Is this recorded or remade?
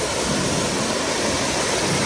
recorded